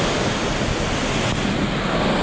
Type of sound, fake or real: real